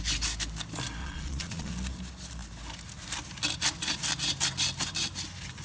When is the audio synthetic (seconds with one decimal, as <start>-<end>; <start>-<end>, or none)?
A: 1.0-1.7